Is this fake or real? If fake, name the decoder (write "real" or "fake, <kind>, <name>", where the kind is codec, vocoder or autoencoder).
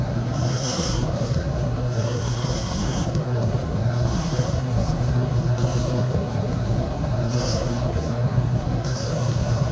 fake, codec, SNAC